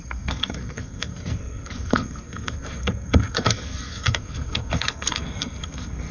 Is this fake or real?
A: fake